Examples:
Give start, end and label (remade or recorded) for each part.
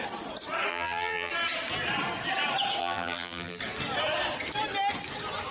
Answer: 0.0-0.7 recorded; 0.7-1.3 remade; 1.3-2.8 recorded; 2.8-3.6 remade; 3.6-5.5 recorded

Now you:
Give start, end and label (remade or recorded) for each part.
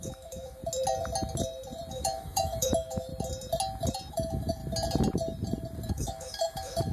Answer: 0.0-0.6 remade; 0.6-1.9 recorded; 1.9-3.1 remade; 3.1-4.1 recorded; 4.1-4.6 remade; 4.6-5.9 recorded; 5.9-6.9 remade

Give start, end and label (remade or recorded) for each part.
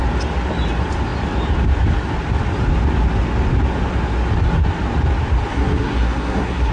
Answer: 0.0-5.5 recorded; 5.5-6.7 remade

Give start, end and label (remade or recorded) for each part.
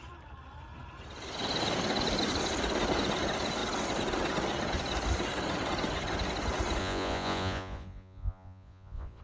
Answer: 0.0-6.8 recorded; 6.8-9.2 remade